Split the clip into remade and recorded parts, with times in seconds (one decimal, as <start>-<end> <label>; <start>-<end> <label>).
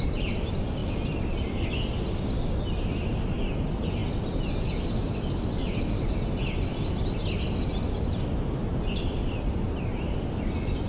0.0-10.9 recorded